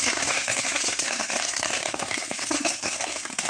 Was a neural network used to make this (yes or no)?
yes